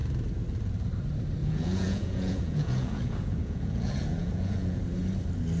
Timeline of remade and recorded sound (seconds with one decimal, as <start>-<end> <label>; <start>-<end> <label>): 0.0-1.4 recorded; 1.4-4.8 remade; 4.8-5.6 recorded